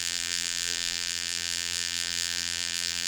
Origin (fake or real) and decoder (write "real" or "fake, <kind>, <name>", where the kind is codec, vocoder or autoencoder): fake, vocoder, BigVGAN v2